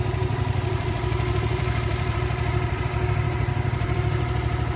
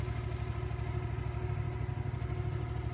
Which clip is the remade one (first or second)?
first